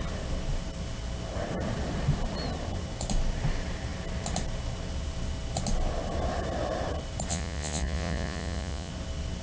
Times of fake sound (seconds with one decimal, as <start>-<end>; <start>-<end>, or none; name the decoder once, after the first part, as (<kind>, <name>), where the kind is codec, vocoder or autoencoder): 7.3-8.9 (vocoder, Vocos)